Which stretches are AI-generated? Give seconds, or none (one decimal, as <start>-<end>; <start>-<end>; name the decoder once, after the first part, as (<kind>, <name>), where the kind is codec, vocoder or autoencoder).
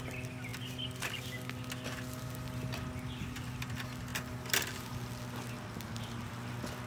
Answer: none